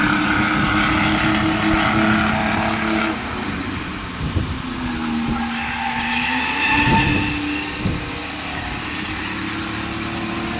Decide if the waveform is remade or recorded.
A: recorded